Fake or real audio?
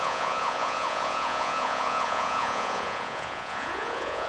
fake